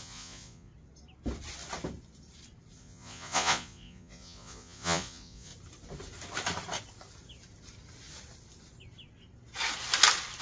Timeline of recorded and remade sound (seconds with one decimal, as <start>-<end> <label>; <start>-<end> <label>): 0.0-0.7 remade; 0.7-2.8 recorded; 2.8-5.5 remade; 5.5-10.4 recorded